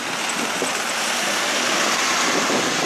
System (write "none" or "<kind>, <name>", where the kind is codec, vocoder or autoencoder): none